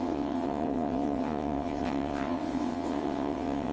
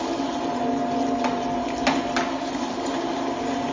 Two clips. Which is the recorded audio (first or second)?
second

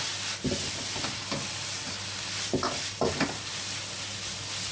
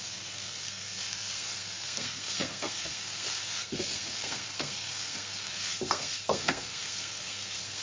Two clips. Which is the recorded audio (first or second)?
first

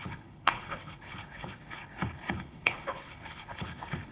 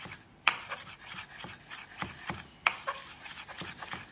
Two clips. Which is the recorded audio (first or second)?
second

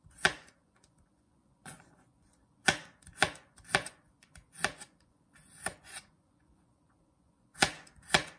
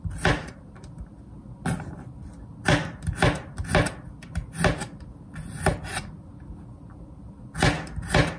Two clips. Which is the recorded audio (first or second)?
second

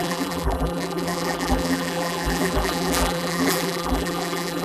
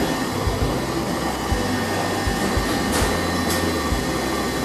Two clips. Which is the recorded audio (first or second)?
second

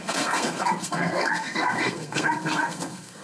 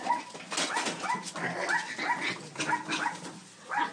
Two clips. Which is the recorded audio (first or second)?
second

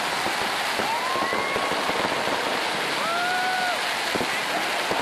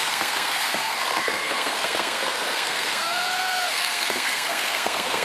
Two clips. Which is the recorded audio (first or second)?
first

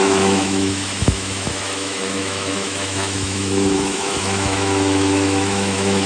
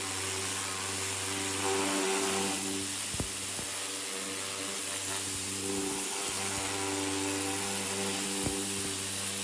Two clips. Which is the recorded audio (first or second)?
second